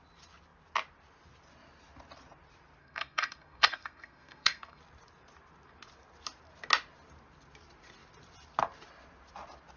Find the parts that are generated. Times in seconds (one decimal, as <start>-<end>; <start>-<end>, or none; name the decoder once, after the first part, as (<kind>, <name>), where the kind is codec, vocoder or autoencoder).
2.8-4.8 (codec, SNAC)